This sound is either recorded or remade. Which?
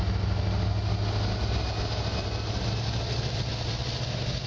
recorded